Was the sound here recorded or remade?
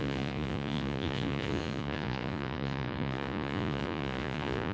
remade